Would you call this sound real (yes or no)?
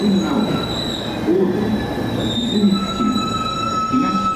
yes